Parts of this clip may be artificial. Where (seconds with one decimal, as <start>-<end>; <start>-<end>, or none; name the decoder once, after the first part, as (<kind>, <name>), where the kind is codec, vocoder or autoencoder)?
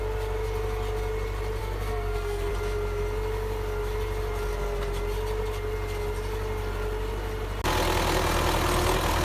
1.6-2.5 (codec, SNAC)